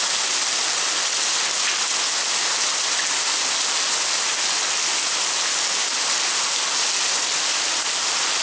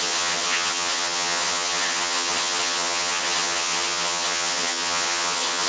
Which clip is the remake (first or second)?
second